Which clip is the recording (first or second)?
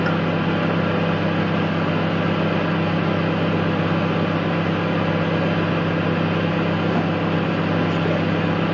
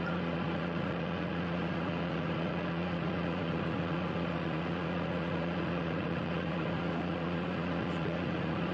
first